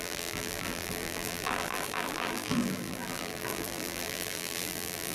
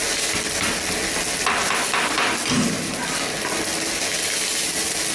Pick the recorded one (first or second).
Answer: second